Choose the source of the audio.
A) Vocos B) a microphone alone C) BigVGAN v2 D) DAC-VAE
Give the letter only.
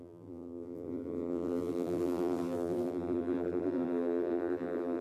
C